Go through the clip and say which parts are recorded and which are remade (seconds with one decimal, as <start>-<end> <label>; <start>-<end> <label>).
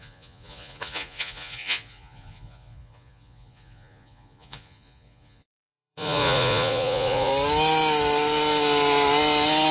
0.0-7.3 remade; 7.3-9.7 recorded